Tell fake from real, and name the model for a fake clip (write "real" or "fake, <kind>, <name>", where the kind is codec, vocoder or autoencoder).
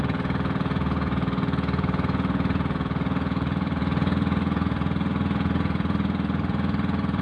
fake, vocoder, Vocos